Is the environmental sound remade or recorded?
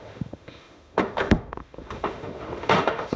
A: remade